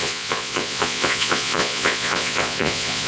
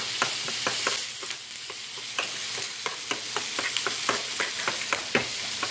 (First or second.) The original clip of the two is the second